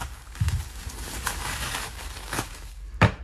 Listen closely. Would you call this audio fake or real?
fake